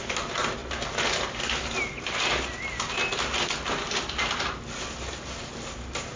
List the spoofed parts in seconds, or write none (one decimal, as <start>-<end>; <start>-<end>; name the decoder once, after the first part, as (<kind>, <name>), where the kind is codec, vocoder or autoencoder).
none